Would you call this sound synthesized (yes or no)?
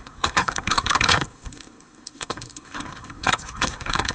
yes